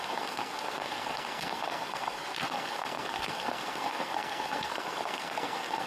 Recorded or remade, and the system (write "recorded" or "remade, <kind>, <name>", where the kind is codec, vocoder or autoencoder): remade, codec, SNAC